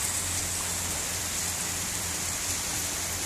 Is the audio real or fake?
fake